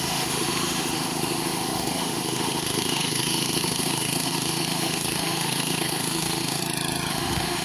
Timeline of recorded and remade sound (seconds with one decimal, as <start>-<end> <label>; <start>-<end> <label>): 0.0-6.6 remade; 6.6-7.1 recorded; 7.1-7.6 remade

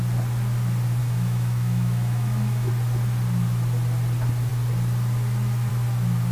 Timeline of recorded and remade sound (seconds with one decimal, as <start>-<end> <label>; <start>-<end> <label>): 0.0-1.0 recorded; 1.0-2.7 remade; 2.7-6.3 recorded

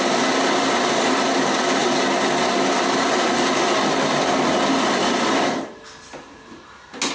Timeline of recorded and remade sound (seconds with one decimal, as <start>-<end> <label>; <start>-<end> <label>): 0.0-7.1 recorded

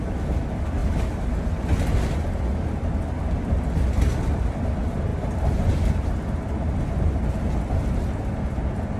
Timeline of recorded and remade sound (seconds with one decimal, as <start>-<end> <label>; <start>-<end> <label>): 0.0-9.0 recorded

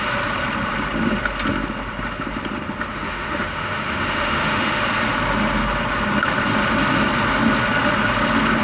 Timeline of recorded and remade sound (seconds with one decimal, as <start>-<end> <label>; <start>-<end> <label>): 0.0-2.9 recorded; 2.9-4.8 remade; 4.8-8.6 recorded

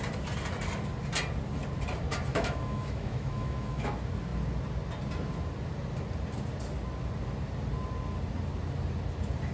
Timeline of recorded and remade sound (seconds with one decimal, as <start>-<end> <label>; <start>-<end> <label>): 0.0-2.3 recorded; 2.3-3.9 remade; 3.9-9.5 recorded

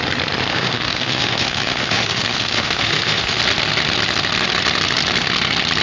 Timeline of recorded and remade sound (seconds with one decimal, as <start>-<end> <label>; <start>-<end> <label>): 0.0-0.5 recorded; 0.5-3.4 remade; 3.4-5.8 recorded

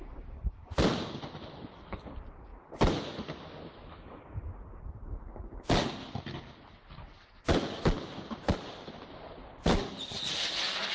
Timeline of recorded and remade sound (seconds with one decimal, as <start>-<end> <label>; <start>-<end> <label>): 0.0-3.9 recorded; 3.9-4.4 remade; 4.4-10.9 recorded